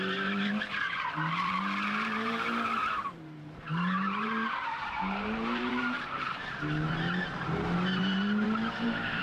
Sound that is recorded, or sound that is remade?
remade